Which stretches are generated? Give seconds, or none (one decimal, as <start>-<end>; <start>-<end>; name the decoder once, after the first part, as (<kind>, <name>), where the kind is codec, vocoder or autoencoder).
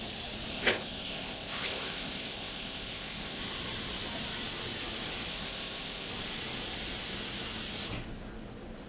0.5-3.4 (codec, ZipCodec); 5.3-6.1